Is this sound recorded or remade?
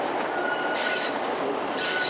remade